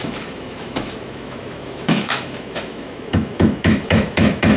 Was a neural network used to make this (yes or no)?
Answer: yes